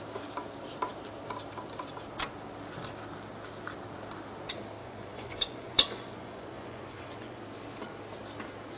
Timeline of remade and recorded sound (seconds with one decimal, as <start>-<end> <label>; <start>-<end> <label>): 0.0-4.8 recorded; 4.8-7.4 remade; 7.4-8.8 recorded